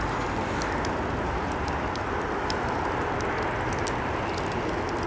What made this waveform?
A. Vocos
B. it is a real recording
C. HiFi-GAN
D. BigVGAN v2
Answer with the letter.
B